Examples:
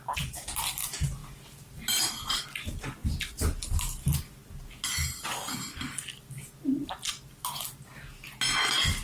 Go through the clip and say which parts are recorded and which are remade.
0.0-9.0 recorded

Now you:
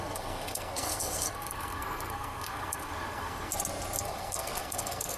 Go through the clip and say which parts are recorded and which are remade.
0.0-3.5 remade; 3.5-4.0 recorded; 4.0-5.2 remade

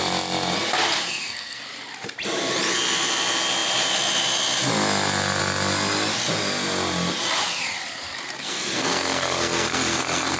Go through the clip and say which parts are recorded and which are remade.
0.0-1.1 recorded; 1.1-1.6 remade; 1.6-8.4 recorded; 8.4-10.4 remade

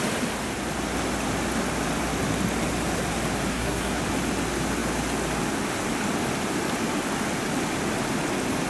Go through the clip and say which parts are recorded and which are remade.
0.0-3.5 recorded; 3.5-4.0 remade; 4.0-8.7 recorded

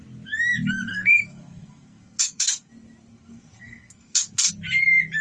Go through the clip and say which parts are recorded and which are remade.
0.0-0.9 recorded; 0.9-2.7 remade; 2.7-3.1 recorded; 3.1-4.5 remade; 4.5-5.2 recorded

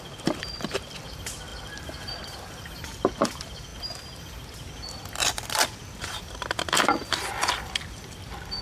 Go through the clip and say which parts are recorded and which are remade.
0.0-8.6 recorded

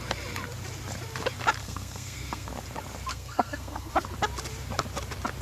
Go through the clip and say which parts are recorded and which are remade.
0.0-1.6 recorded; 1.6-2.5 remade; 2.5-3.1 recorded; 3.1-3.9 remade; 3.9-5.4 recorded